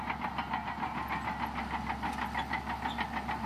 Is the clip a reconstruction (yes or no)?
no